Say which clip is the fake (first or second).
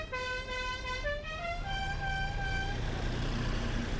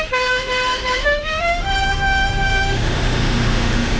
second